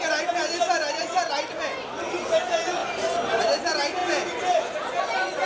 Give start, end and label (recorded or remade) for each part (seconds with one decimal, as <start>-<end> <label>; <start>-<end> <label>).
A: 0.0-5.5 recorded